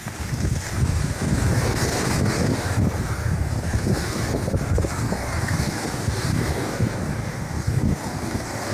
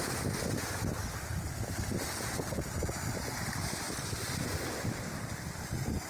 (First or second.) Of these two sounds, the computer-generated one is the first